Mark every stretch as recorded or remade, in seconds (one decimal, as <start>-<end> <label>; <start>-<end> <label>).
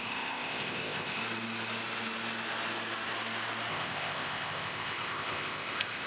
0.0-1.2 remade; 1.2-3.7 recorded; 3.7-6.1 remade